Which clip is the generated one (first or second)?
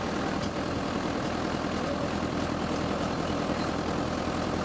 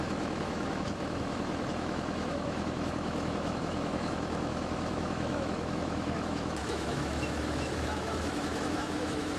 second